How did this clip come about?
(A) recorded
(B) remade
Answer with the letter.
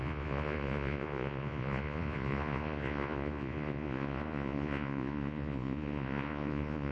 B